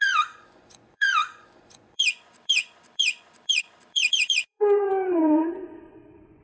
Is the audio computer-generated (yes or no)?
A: yes